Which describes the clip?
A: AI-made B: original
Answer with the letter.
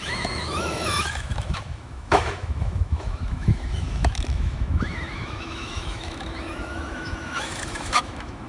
A